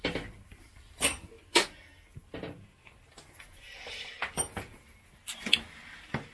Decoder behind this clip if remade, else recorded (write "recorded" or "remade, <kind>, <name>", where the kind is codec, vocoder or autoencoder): recorded